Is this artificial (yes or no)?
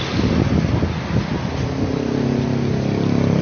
no